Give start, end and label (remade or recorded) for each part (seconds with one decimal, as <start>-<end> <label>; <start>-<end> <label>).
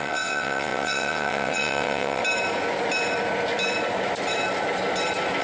0.0-2.2 remade; 2.2-5.4 recorded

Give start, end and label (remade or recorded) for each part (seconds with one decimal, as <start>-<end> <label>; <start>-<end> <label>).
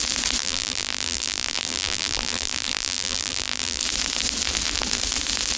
0.0-0.4 recorded; 0.4-3.8 remade; 3.8-5.6 recorded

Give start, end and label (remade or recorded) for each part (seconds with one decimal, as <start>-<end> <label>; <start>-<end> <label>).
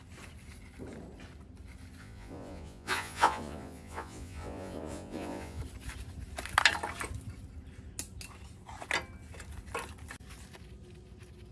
0.0-2.0 recorded; 2.0-5.6 remade; 5.6-11.5 recorded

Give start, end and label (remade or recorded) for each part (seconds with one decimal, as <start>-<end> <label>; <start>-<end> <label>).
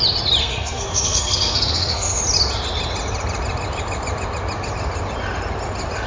0.0-0.4 recorded; 0.4-2.2 remade; 2.2-6.1 recorded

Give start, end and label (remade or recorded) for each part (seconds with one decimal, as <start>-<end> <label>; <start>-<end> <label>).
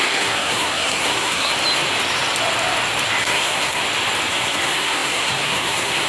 0.0-1.5 remade; 1.5-3.2 recorded; 3.2-3.8 remade; 3.8-4.3 recorded; 4.3-6.1 remade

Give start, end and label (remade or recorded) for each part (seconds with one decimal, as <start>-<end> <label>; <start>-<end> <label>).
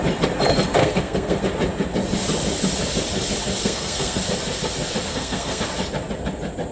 0.0-0.8 recorded; 0.8-1.4 remade; 1.4-3.6 recorded; 3.6-4.2 remade; 4.2-5.1 recorded; 5.1-5.6 remade; 5.6-6.7 recorded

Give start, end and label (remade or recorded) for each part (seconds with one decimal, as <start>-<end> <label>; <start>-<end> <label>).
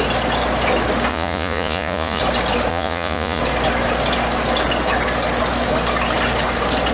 0.0-1.1 recorded; 1.1-2.2 remade; 2.2-2.7 recorded; 2.7-3.4 remade; 3.4-6.9 recorded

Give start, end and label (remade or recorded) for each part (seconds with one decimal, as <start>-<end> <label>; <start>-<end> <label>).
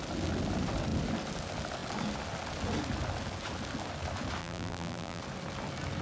0.0-4.4 recorded; 4.4-5.2 remade; 5.2-6.0 recorded